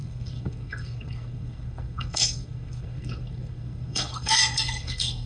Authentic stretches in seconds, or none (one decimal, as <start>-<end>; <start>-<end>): none